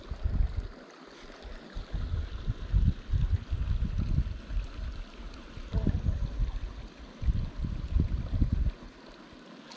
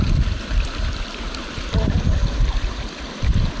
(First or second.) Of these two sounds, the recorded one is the first